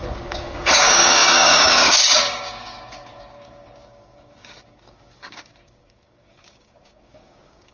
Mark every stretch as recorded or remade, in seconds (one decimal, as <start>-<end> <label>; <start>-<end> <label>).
0.0-7.7 remade